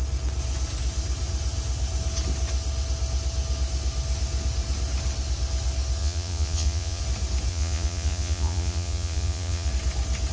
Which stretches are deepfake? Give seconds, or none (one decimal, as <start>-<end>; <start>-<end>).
6.0-7.0; 7.5-9.7